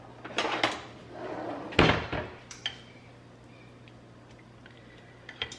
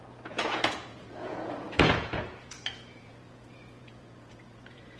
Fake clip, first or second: second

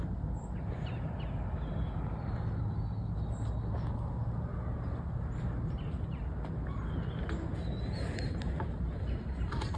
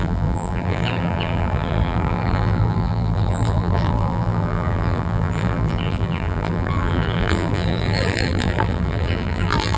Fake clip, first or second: second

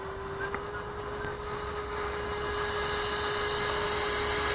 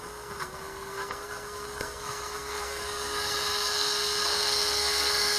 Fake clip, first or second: second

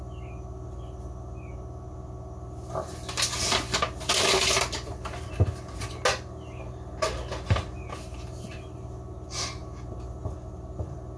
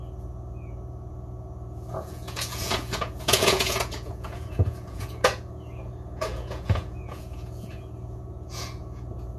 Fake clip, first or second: second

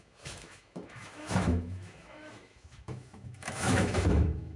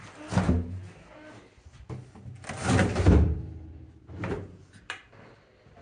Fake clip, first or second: first